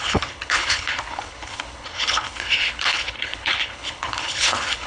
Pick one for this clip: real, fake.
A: fake